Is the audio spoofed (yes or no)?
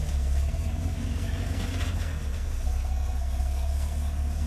yes